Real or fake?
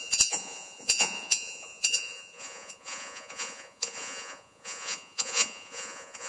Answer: fake